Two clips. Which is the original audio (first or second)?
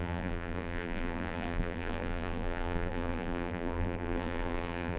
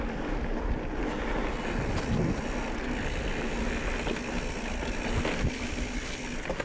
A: second